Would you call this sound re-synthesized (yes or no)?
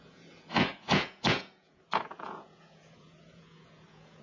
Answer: yes